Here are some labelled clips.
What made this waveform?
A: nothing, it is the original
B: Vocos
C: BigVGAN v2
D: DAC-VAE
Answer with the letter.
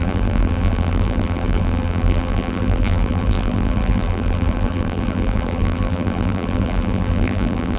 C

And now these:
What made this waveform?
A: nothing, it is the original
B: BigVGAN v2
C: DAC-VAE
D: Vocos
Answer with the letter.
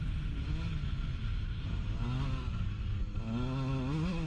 A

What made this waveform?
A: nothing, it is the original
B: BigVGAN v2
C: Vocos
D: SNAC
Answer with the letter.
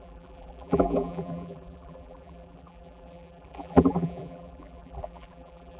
B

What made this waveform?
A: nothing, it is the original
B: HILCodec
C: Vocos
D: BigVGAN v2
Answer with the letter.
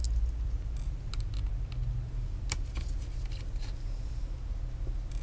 A